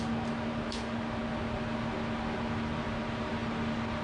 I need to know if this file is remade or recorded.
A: recorded